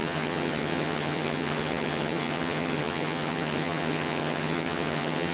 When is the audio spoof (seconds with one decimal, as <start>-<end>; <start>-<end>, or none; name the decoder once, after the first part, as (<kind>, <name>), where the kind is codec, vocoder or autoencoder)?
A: 0.0-5.3 (vocoder, HiFi-GAN)